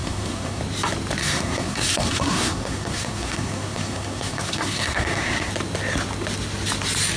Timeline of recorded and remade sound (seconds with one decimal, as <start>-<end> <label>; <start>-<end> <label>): 0.0-0.6 remade; 0.6-1.2 recorded; 1.2-5.5 remade; 5.5-7.2 recorded